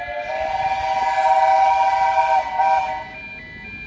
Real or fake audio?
real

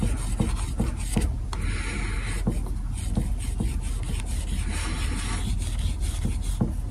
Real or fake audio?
real